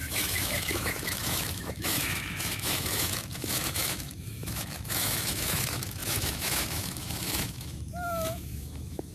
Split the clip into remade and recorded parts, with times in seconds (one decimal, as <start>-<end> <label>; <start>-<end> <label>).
0.0-9.1 remade